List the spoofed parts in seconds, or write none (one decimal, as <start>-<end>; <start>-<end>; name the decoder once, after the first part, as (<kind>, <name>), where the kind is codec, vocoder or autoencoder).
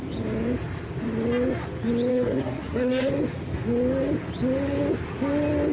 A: 2.1-3.1 (codec, SNAC)